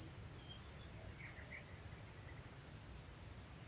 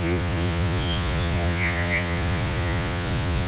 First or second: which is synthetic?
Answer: second